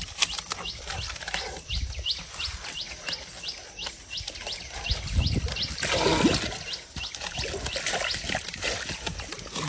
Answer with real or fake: real